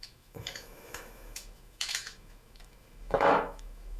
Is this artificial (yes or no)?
yes